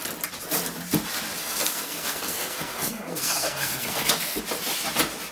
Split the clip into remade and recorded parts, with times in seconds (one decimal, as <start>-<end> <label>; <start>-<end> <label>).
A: 0.0-1.4 recorded; 1.4-4.4 remade; 4.4-5.3 recorded